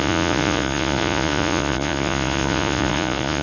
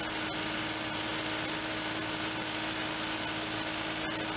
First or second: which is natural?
second